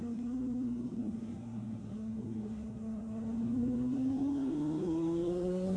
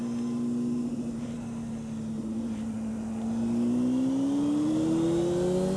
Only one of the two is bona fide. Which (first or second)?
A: second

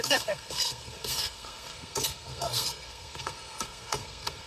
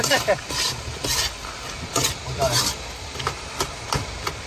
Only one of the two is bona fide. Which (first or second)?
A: second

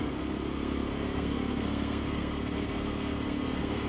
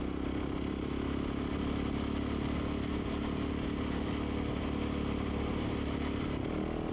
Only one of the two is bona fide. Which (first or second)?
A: second